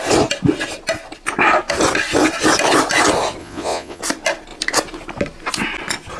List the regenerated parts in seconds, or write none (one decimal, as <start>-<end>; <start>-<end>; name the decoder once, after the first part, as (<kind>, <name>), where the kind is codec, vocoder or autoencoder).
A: 3.4-4.0 (vocoder, Vocos)